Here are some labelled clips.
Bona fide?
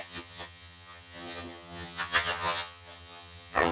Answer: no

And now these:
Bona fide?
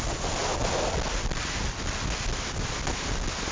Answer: yes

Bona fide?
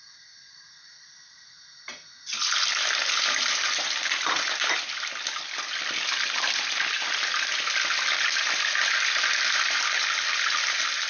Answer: yes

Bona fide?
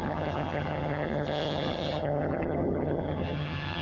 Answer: no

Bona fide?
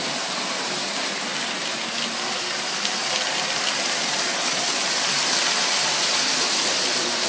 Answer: yes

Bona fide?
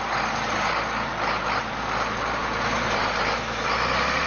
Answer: yes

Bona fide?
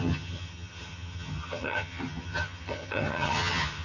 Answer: no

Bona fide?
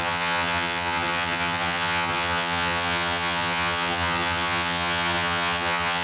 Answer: no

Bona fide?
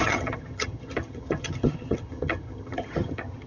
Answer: no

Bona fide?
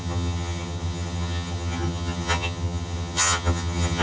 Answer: no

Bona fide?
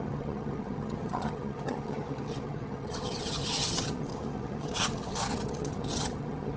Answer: no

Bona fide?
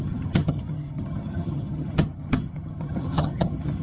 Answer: no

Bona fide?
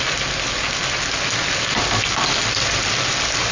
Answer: yes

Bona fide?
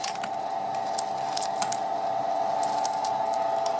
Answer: yes